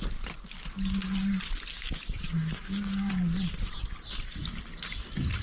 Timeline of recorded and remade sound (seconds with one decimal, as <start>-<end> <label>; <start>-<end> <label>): 0.0-1.7 recorded; 1.7-3.1 remade; 3.1-5.4 recorded